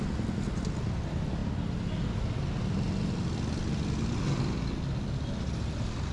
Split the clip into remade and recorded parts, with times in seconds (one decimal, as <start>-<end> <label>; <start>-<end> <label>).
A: 0.0-6.1 recorded